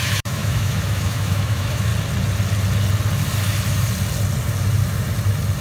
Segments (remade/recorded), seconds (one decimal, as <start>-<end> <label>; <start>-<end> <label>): 0.0-1.9 remade; 1.9-5.6 recorded